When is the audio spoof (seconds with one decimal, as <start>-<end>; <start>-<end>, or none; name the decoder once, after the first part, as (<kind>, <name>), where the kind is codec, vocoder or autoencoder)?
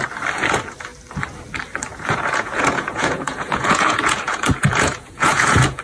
1.9-5.8 (vocoder, Vocos)